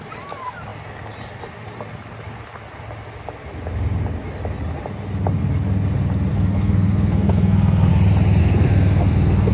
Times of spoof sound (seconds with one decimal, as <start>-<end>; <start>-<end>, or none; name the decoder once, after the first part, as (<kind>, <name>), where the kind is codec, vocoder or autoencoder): 6.3-7.9 (codec, SNAC); 8.4-9.5